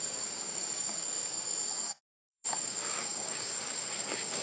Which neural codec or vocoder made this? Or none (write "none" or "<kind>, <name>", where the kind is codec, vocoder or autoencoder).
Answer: codec, DAC